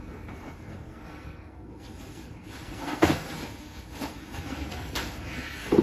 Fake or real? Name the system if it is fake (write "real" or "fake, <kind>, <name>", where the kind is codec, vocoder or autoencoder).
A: fake, codec, SNAC